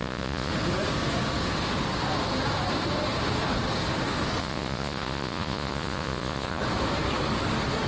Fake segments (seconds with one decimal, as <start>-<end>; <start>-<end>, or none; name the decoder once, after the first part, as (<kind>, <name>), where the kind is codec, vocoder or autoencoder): 0.0-0.5 (vocoder, Vocos); 4.4-6.6